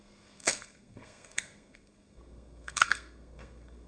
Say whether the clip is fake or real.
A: fake